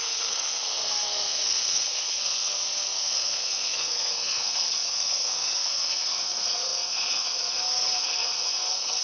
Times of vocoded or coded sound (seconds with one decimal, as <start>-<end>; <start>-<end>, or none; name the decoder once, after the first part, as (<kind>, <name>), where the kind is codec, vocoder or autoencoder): 0.0-9.0 (codec, SNAC)